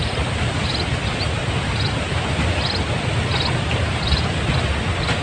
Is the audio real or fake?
real